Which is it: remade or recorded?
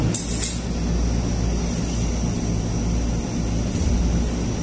recorded